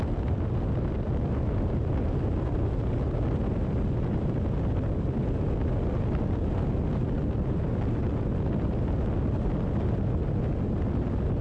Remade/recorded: recorded